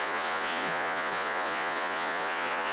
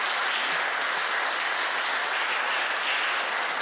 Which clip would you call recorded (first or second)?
second